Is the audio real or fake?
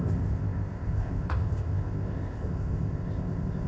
fake